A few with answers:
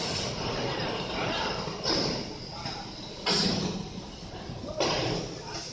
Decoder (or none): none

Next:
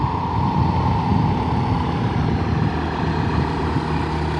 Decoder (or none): none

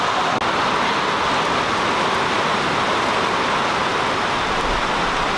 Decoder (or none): none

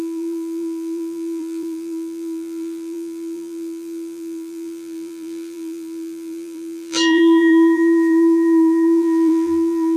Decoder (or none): vocoder, BigVGAN v2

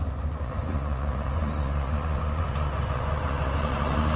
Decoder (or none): vocoder, Vocos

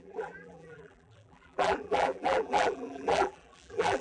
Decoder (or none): vocoder, BigVGAN v2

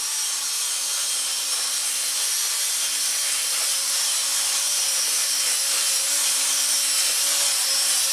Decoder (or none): none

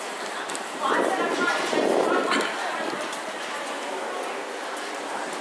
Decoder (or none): none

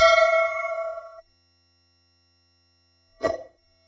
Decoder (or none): vocoder, HiFi-GAN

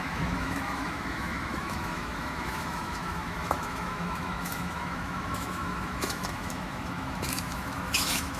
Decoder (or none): autoencoder, DAC-VAE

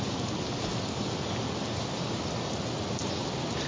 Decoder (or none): none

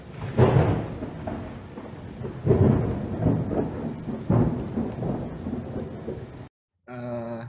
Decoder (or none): none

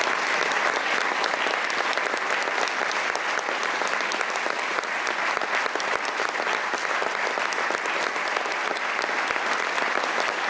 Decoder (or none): none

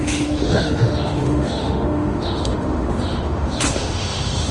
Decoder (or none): autoencoder, DAC-VAE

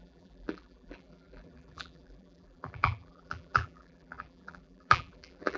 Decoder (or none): vocoder, BigVGAN v2